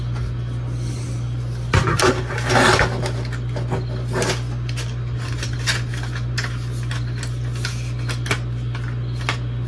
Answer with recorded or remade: recorded